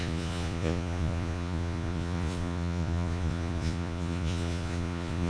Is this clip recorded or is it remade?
remade